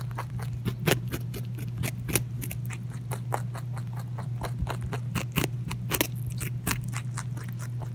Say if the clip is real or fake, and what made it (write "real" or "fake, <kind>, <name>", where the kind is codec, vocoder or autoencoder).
real